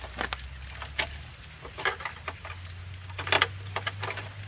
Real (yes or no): yes